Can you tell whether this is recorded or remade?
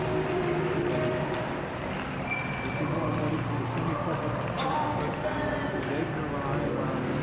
recorded